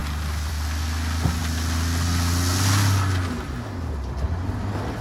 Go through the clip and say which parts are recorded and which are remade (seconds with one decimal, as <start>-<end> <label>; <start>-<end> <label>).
0.0-5.0 recorded